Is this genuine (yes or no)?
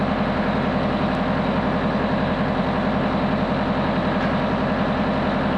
yes